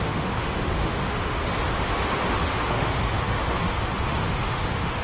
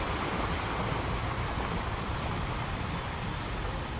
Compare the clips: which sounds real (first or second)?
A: second